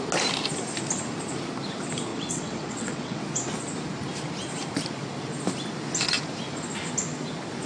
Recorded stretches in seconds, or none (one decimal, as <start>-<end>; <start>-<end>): 0.0-2.1; 3.2-7.7